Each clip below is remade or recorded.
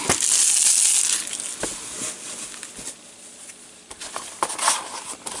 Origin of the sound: recorded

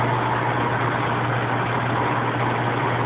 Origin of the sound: recorded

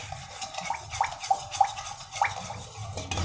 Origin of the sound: recorded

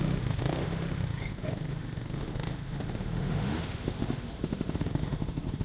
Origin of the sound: remade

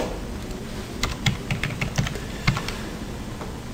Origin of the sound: recorded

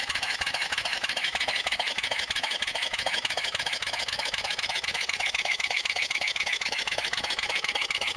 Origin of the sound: remade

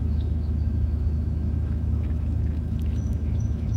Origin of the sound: remade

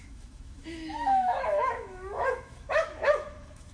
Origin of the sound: remade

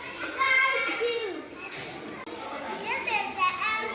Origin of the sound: recorded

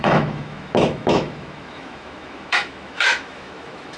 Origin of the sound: remade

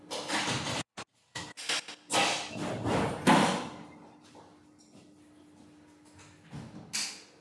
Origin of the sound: recorded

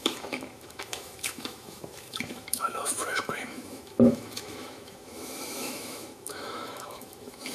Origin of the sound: remade